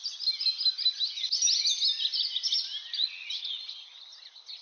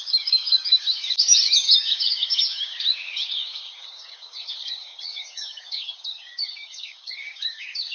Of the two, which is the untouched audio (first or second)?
first